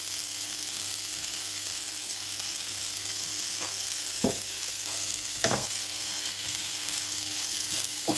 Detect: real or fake fake